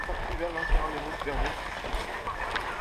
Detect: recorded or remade recorded